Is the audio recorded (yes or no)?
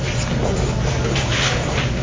yes